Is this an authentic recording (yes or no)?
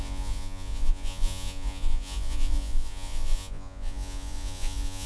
no